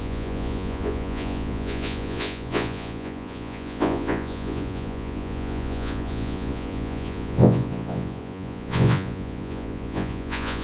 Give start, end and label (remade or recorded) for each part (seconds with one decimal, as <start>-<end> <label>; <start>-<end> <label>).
0.0-10.6 remade